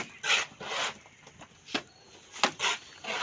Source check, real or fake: real